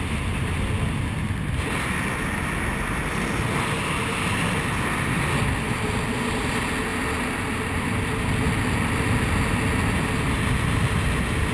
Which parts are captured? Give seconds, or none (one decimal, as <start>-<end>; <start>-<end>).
0.0-11.5